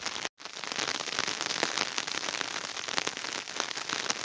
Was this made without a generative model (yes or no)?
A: yes